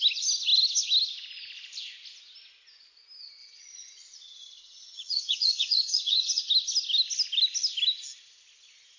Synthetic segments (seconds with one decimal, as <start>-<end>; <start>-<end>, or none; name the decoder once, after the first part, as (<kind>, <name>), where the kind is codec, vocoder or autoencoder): 3.4-6.5 (vocoder, Vocos)